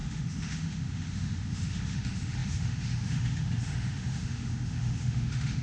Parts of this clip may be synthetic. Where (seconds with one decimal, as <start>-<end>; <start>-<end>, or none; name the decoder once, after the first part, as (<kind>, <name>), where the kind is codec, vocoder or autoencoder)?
0.0-5.6 (autoencoder, DAC-VAE)